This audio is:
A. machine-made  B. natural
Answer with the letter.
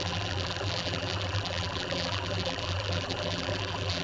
A